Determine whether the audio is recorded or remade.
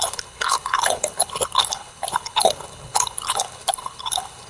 remade